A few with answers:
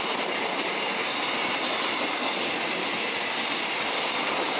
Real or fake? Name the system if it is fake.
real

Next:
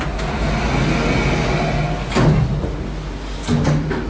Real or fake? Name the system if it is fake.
real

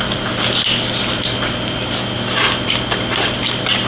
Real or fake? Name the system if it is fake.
real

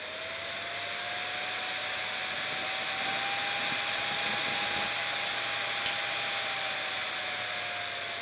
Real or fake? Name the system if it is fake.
real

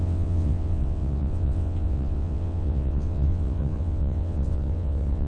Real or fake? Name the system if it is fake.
fake, vocoder, WaveNeXt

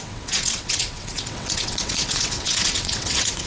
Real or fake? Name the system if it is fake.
fake, vocoder, WaveNeXt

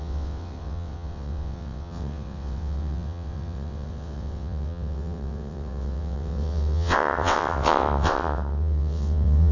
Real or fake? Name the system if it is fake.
fake, vocoder, WaveNeXt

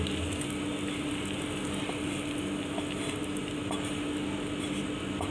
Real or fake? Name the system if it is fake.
real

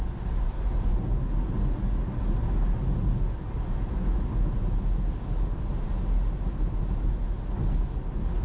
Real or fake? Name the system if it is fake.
real